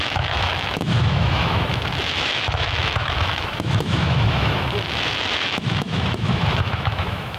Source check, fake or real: fake